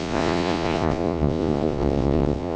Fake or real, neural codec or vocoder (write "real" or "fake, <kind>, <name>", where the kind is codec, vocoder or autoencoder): fake, vocoder, Vocos